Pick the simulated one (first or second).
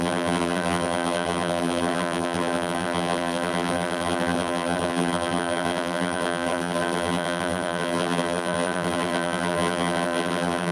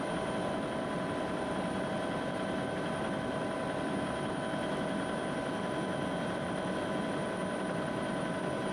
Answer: first